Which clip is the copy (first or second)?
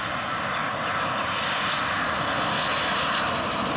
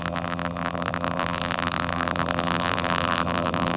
second